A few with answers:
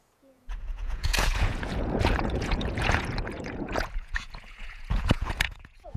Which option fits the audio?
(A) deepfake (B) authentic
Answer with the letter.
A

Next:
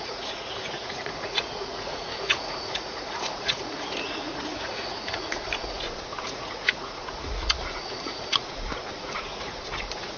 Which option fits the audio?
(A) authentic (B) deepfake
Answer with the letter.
B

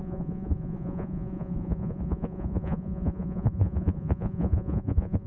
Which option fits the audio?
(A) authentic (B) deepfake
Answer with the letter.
B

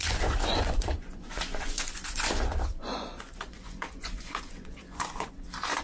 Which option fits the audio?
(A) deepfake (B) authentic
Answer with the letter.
A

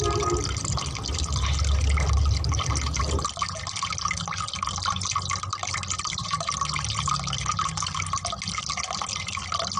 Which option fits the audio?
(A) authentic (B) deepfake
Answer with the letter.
A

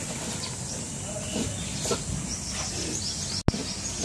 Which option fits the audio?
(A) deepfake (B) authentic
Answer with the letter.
B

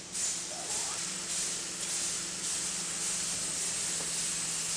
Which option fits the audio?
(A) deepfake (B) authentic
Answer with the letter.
B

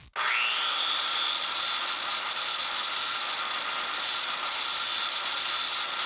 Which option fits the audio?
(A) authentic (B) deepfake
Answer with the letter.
A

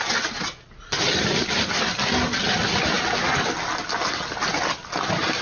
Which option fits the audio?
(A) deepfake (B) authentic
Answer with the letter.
B